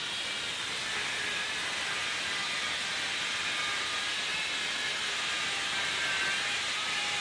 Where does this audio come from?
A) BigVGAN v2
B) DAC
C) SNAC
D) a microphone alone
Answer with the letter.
D